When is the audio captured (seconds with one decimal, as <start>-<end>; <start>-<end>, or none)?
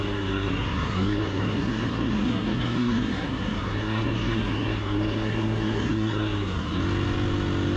6.8-7.8